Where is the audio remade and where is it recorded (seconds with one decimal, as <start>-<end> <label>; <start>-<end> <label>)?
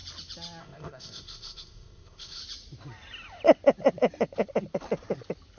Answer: 0.0-0.6 recorded; 0.6-2.4 remade; 2.4-5.6 recorded